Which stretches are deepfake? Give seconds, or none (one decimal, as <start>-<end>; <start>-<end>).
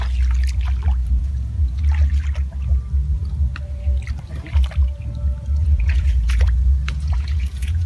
1.0-1.8; 5.6-7.9